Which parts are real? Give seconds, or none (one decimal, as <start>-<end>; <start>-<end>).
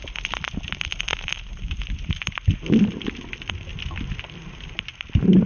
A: 0.0-1.1; 1.8-3.7; 4.8-5.5